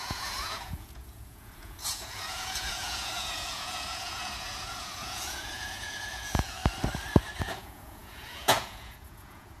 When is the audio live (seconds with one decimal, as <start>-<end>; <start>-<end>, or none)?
6.6-7.4

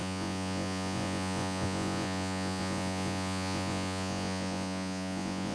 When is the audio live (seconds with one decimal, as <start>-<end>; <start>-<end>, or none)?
none

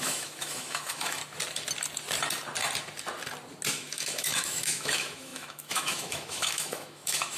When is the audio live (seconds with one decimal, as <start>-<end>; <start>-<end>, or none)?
1.2-3.7

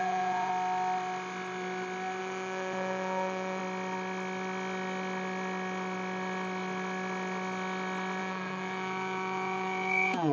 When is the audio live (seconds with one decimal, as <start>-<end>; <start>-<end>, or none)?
0.5-2.2; 3.6-8.2

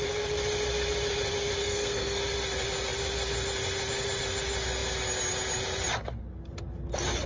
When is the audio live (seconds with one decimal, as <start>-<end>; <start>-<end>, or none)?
0.0-1.6; 2.2-7.3

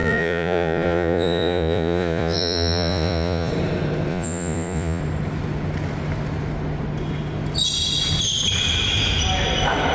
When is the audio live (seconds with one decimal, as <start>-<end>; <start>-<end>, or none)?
3.5-4.1; 5.0-9.9

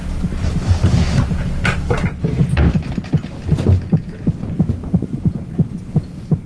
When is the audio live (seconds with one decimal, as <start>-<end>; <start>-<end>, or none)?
0.0-4.8; 5.4-6.5

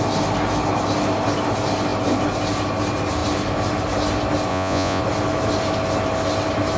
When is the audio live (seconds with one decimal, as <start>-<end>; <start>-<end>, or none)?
0.0-4.5; 5.0-6.8